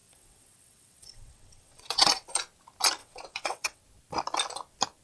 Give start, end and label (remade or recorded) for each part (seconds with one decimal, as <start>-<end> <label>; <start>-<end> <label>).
0.0-2.3 remade; 2.3-3.0 recorded; 3.0-3.8 remade; 3.8-5.0 recorded